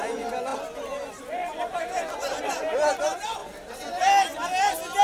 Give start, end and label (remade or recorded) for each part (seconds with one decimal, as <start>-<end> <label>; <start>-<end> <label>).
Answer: 0.0-5.0 recorded